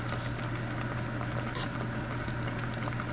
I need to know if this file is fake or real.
real